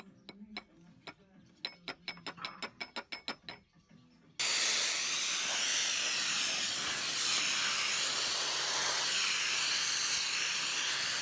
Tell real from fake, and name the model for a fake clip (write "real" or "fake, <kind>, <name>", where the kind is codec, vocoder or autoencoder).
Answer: real